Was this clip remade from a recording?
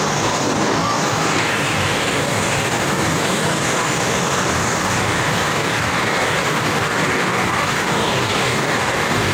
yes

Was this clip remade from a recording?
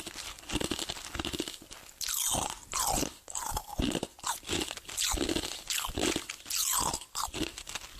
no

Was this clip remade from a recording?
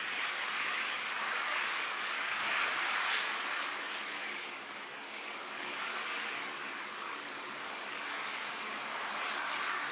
yes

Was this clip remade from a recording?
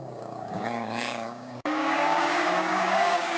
yes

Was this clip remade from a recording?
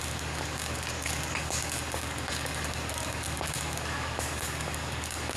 yes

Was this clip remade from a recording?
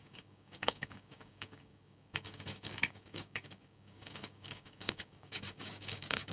yes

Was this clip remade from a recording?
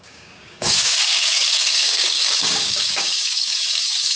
yes